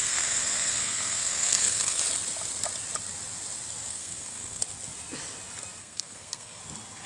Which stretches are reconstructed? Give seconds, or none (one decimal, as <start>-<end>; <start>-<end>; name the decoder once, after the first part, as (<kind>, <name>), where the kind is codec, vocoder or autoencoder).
0.0-2.0 (codec, SNAC); 3.9-4.6; 5.8-6.6